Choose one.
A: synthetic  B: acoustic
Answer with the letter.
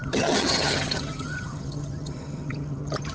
A